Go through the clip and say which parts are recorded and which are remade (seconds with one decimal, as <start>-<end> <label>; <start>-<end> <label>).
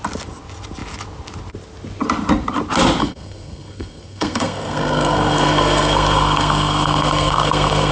0.0-3.0 recorded; 3.0-7.9 remade